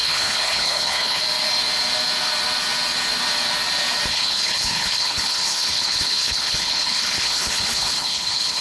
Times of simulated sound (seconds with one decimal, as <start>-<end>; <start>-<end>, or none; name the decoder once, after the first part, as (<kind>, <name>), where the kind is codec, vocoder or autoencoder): 0.0-1.2 (codec, HILCodec); 4.1-8.6